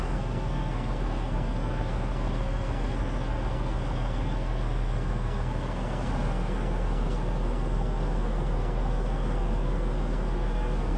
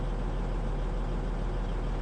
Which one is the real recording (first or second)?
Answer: second